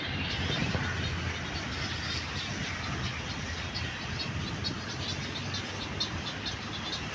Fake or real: real